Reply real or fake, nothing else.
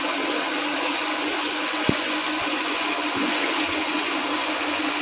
fake